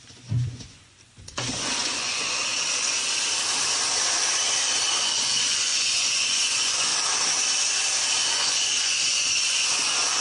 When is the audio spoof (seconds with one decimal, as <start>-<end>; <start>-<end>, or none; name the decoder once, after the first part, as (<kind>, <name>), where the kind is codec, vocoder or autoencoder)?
0.0-2.5 (vocoder, Vocos); 4.9-6.9; 8.3-10.2